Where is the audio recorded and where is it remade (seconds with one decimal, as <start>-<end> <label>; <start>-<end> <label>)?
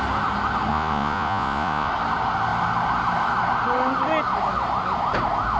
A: 0.0-0.7 recorded; 0.7-1.9 remade; 1.9-5.6 recorded